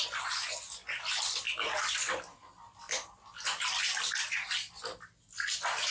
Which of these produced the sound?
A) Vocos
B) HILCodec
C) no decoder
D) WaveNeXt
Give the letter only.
C